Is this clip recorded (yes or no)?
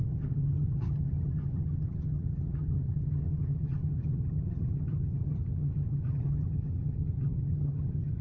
no